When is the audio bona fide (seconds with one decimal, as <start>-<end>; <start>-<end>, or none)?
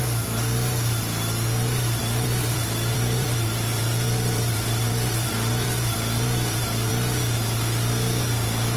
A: 0.0-2.0; 6.9-8.8